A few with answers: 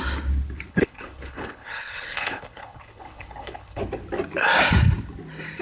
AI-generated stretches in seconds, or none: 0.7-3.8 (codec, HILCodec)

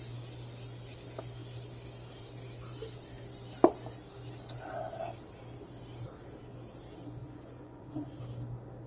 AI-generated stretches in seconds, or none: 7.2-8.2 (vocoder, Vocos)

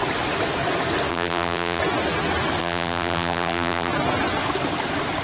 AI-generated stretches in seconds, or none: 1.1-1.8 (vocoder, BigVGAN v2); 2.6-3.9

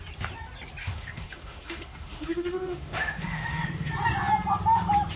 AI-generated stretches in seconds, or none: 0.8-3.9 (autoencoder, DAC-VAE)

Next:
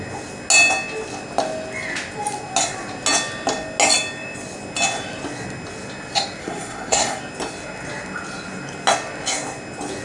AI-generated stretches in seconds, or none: 6.4-7.2 (codec, SNAC)